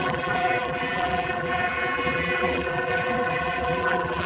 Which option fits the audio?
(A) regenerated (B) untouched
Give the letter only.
A